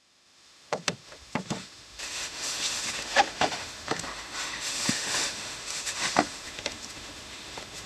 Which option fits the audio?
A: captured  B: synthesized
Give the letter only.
B